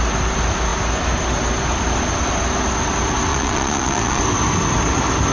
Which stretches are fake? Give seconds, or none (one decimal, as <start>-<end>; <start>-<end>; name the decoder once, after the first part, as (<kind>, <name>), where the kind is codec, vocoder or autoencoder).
3.3-4.2 (vocoder, Vocos)